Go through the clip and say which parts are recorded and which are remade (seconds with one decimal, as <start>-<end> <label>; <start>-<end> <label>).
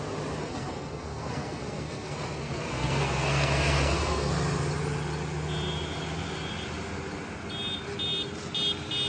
0.0-0.4 recorded; 0.4-4.3 remade; 4.3-9.1 recorded